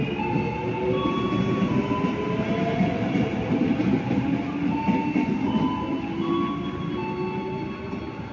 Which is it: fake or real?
real